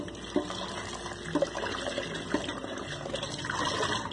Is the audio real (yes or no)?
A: yes